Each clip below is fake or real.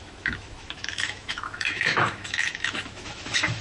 fake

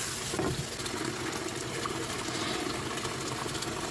real